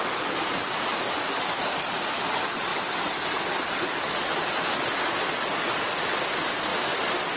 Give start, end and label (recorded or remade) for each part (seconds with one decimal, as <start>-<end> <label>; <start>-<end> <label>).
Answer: 0.0-0.9 recorded; 0.9-1.6 remade; 1.6-7.4 recorded